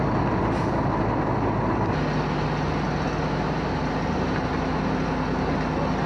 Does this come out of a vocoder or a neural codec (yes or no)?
no